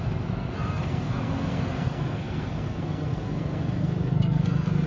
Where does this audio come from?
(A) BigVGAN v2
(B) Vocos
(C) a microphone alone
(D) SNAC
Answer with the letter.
D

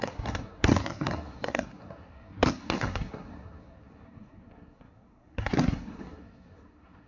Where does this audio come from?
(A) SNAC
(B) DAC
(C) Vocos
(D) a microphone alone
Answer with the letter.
A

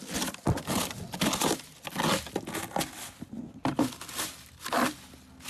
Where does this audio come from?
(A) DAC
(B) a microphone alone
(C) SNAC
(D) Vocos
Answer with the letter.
B